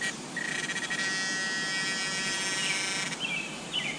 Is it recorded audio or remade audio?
recorded